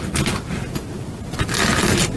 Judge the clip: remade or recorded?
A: recorded